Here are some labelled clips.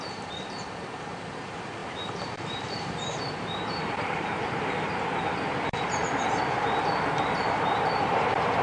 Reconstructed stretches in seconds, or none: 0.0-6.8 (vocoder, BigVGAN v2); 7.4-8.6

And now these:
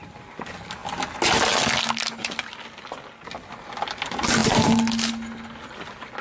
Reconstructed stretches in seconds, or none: none

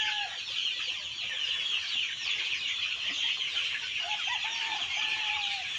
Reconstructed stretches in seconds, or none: 2.2-5.8 (vocoder, BigVGAN v2)

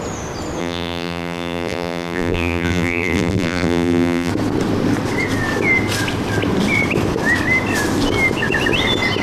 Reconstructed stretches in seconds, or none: 0.6-4.3 (vocoder, BigVGAN v2)

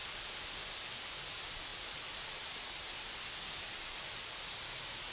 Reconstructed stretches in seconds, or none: 0.6-5.1 (vocoder, BigVGAN v2)

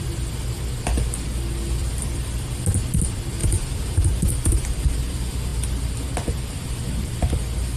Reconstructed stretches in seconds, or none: 1.8-2.5 (vocoder, BigVGAN v2)

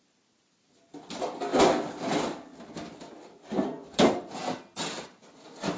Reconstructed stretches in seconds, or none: none

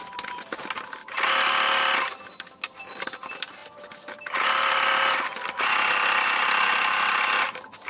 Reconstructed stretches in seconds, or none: none